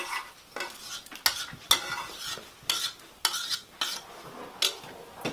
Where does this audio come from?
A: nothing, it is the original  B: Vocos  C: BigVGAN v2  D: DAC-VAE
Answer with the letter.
A